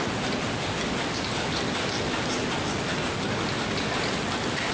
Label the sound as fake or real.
real